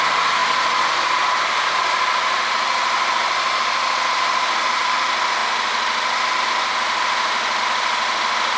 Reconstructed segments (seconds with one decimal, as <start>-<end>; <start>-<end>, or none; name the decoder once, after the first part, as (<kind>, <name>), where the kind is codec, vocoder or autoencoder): none